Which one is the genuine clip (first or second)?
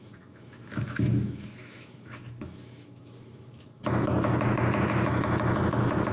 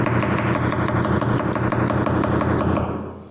second